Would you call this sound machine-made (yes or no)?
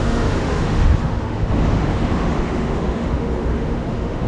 yes